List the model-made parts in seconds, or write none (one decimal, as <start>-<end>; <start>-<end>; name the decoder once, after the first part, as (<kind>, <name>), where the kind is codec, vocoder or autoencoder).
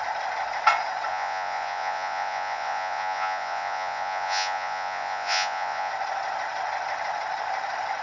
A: 1.1-5.9 (vocoder, Vocos)